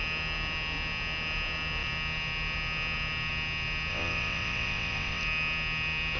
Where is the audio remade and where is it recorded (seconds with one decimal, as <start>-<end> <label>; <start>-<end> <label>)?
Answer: 0.0-3.9 recorded; 3.9-5.2 remade; 5.2-6.2 recorded